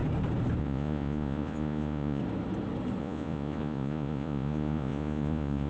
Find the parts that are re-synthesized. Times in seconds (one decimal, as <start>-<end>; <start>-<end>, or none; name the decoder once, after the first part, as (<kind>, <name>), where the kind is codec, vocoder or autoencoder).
0.6-2.2 (vocoder, Vocos); 3.0-5.7